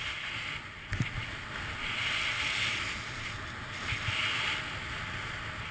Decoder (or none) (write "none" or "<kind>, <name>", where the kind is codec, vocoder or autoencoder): none